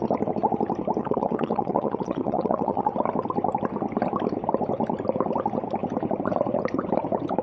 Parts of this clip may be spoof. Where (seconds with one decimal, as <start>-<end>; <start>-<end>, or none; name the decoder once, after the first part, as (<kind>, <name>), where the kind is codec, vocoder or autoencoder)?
1.0-2.9 (vocoder, Vocos)